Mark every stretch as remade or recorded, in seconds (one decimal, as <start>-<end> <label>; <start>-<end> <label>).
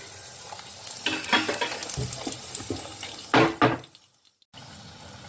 0.0-5.3 recorded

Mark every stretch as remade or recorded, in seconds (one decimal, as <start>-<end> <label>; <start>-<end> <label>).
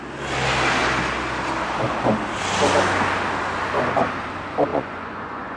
0.0-4.7 recorded; 4.7-5.6 remade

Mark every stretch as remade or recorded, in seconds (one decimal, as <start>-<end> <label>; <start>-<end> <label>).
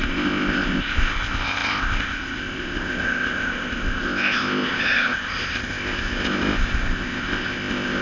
0.0-8.0 remade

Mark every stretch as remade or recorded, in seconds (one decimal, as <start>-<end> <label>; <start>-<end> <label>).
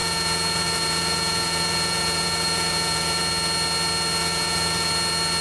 0.0-3.2 remade; 3.2-4.2 recorded; 4.2-4.9 remade; 4.9-5.4 recorded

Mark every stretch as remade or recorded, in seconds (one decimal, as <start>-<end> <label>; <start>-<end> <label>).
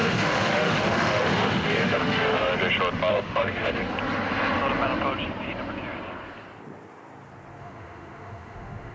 0.0-2.5 remade; 2.5-3.1 recorded; 3.1-3.8 remade; 3.8-7.6 recorded; 7.6-8.9 remade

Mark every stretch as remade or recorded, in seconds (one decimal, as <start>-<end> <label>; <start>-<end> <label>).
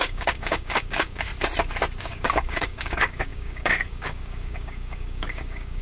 0.0-1.3 remade; 1.3-2.0 recorded; 2.0-5.8 remade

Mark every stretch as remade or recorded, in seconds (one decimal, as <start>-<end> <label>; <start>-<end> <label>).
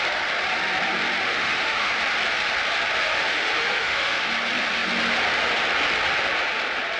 0.0-1.2 recorded; 1.2-1.9 remade; 1.9-3.0 recorded; 3.0-4.3 remade; 4.3-7.0 recorded